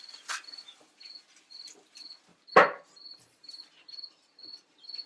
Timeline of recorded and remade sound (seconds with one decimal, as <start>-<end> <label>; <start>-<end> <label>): 0.0-2.3 recorded; 2.3-3.7 remade; 3.7-5.1 recorded